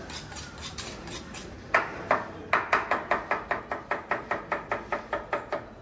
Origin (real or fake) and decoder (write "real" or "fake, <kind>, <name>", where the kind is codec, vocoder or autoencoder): real